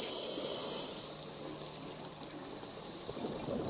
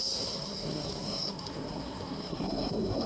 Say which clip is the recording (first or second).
first